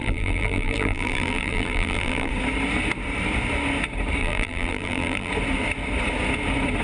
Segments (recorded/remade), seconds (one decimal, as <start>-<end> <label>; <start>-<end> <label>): 0.0-2.3 remade; 2.3-4.2 recorded; 4.2-5.3 remade; 5.3-6.8 recorded

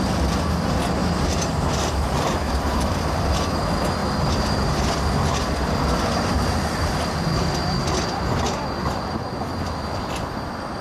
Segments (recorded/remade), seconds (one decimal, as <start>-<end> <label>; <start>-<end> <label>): 0.0-1.0 recorded; 1.0-3.5 remade; 3.5-10.8 recorded

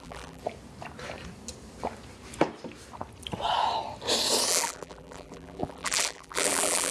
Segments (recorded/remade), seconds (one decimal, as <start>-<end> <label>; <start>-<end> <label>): 0.0-0.4 remade; 0.4-4.5 recorded; 4.5-6.9 remade

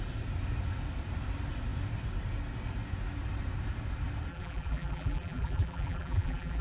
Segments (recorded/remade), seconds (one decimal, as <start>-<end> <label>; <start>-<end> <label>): 0.0-4.3 recorded; 4.3-6.6 remade

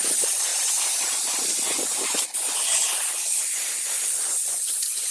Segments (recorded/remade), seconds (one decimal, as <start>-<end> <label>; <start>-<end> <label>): 0.0-0.5 recorded; 0.5-1.7 remade; 1.7-4.4 recorded; 4.4-5.1 remade

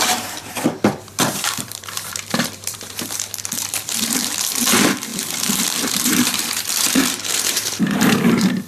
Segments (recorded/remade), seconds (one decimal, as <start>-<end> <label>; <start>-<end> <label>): 0.0-8.7 remade

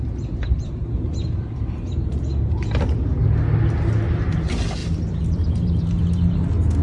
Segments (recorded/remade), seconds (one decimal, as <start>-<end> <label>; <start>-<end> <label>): 0.0-4.8 recorded; 4.8-6.0 remade; 6.0-6.8 recorded

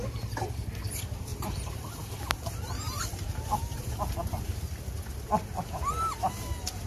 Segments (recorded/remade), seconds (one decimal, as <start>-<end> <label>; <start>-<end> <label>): 0.0-1.3 recorded; 1.3-3.9 remade; 3.9-6.9 recorded